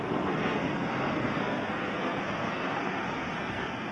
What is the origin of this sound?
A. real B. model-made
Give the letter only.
B